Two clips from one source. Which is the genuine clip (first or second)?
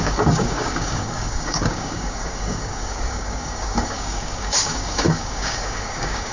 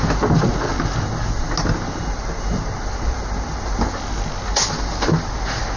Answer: second